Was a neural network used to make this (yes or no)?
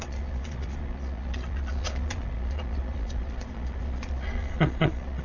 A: yes